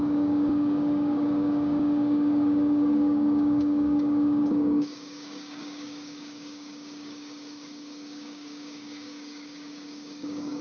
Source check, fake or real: fake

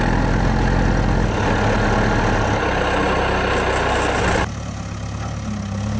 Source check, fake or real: real